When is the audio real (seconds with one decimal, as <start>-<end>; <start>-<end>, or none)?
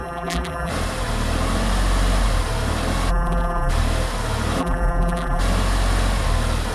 0.7-3.1; 3.7-4.6; 5.4-6.7